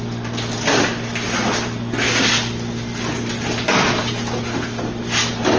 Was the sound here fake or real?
real